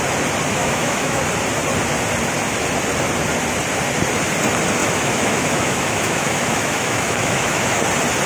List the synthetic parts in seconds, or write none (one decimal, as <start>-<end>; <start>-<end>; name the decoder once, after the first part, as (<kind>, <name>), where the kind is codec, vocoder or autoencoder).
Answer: 0.6-1.2 (autoencoder, DAC-VAE); 4.8-7.8